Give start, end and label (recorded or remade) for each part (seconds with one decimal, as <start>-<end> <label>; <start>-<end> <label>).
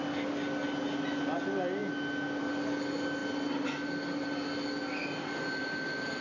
0.0-6.2 recorded